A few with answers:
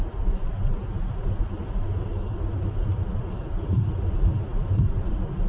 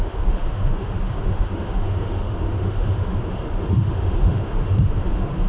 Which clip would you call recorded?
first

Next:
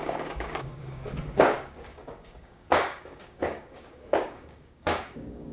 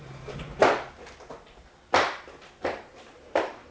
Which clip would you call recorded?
second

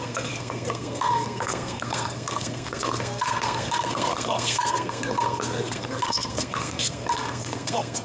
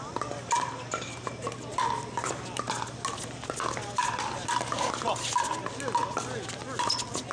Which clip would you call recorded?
second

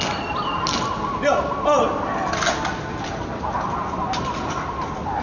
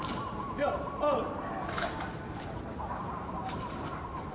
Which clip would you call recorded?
first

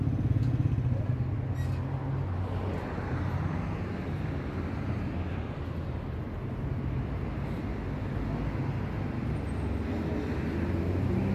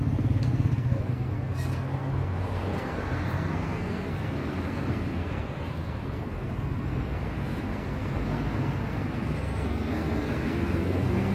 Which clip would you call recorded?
first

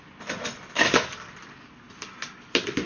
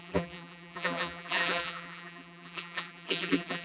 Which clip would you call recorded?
first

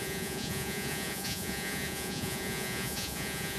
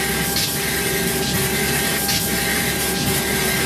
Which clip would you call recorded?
second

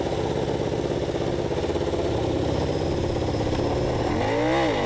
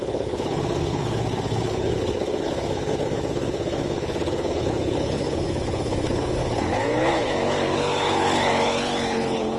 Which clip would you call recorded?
first